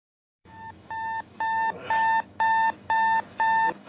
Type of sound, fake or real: fake